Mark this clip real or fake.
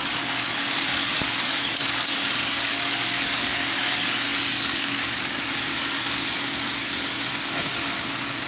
fake